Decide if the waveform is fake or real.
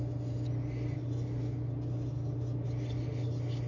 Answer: real